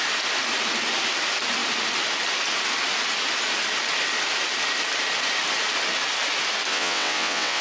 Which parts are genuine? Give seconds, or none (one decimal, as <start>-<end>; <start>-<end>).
0.0-6.7